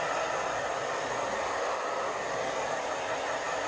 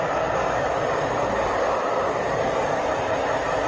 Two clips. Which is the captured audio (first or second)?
first